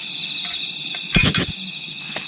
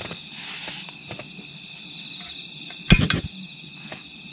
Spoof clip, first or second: first